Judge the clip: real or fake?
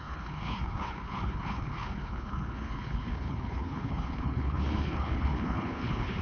fake